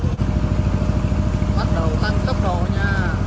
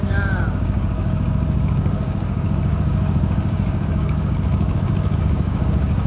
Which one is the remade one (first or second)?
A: second